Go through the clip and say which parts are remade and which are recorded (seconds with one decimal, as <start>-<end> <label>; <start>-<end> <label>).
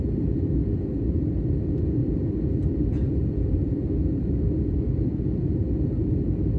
0.0-0.6 recorded; 0.6-1.6 remade; 1.6-2.0 recorded; 2.0-5.6 remade; 5.6-6.6 recorded